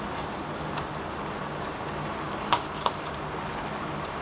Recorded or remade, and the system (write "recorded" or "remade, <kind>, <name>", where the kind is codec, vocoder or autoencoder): recorded